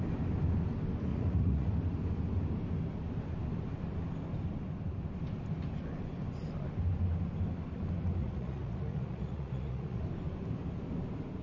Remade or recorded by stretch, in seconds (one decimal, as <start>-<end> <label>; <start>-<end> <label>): 0.0-1.1 recorded; 1.1-1.7 remade; 1.7-8.2 recorded; 8.2-10.0 remade; 10.0-11.4 recorded